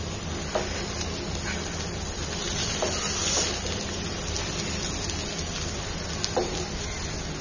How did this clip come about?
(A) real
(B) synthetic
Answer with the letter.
A